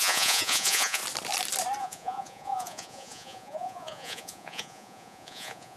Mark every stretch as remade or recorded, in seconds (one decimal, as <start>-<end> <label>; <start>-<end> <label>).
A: 0.0-1.0 remade; 1.0-1.8 recorded; 1.8-5.8 remade